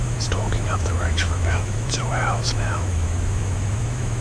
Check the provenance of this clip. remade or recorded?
remade